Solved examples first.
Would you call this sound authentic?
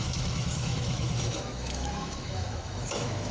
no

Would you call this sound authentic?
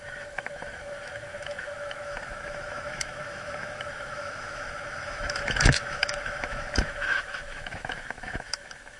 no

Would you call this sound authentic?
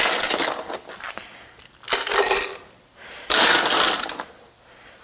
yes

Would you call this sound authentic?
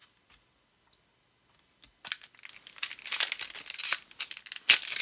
yes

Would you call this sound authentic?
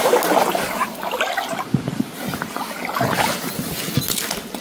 yes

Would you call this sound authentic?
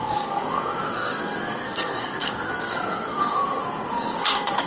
no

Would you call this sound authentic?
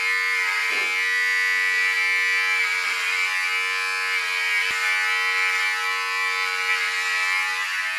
yes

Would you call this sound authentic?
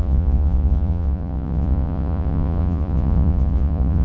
no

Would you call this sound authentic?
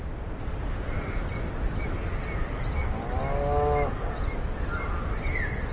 yes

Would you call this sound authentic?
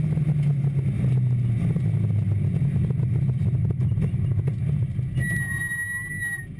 yes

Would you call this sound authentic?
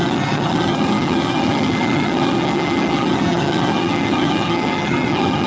no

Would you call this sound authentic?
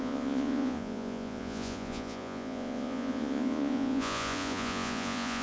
no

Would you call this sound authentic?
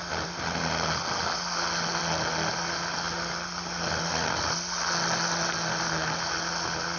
yes